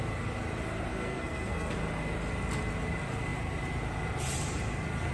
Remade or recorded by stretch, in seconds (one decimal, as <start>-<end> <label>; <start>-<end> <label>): 0.0-0.9 recorded; 0.9-1.7 remade; 1.7-5.1 recorded